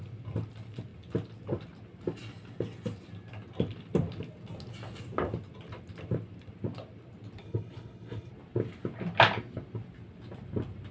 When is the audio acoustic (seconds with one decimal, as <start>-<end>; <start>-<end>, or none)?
0.0-7.4; 8.3-10.9